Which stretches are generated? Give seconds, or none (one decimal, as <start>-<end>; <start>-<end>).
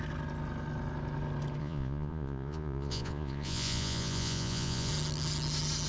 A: 1.6-4.9